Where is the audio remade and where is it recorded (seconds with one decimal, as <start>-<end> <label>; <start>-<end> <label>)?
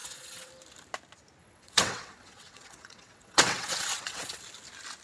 0.0-0.5 remade; 0.5-1.4 recorded; 1.4-4.4 remade; 4.4-5.0 recorded